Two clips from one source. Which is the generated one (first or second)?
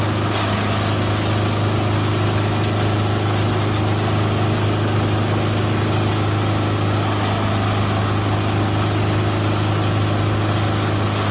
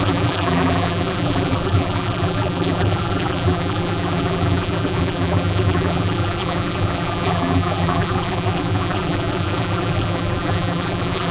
second